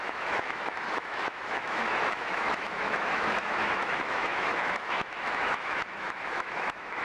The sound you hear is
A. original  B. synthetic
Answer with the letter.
B